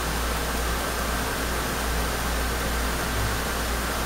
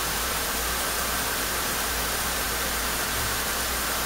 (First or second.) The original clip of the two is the first